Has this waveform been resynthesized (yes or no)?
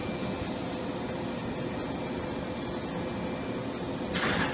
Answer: no